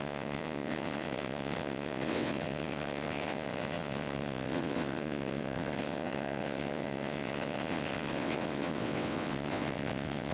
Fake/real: fake